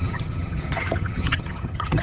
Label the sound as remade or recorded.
remade